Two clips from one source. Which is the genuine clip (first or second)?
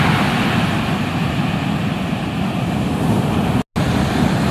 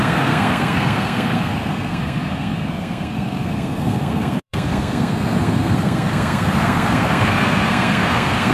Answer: first